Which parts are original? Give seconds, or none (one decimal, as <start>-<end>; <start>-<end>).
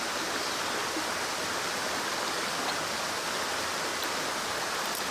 0.0-5.1